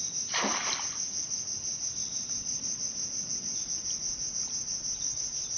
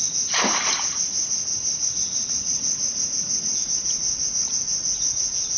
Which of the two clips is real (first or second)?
first